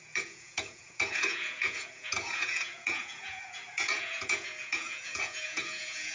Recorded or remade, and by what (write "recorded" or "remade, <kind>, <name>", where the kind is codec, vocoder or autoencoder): remade, vocoder, Vocos